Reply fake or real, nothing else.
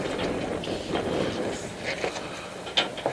real